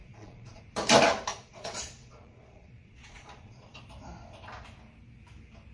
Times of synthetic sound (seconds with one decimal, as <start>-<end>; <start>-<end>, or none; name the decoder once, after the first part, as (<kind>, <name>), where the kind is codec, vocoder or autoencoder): 0.0-0.6 (vocoder, Vocos); 1.3-3.8